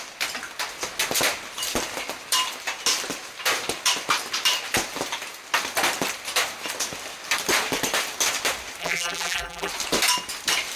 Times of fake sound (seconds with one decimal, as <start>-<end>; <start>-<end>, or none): 8.8-9.7